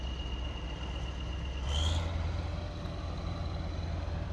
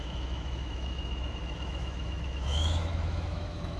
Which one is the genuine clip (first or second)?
first